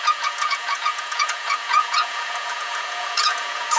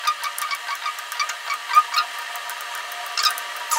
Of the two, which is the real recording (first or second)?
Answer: second